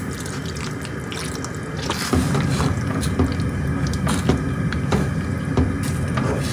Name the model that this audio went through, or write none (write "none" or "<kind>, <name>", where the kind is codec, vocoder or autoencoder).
none